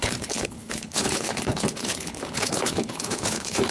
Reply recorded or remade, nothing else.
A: remade